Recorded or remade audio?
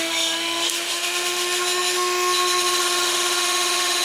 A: remade